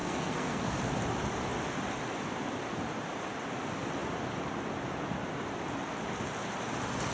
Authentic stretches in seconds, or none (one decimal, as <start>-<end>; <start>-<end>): 0.8-7.1